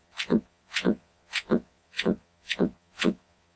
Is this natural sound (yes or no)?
no